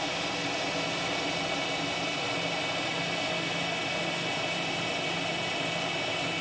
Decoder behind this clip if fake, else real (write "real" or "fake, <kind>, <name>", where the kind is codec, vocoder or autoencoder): real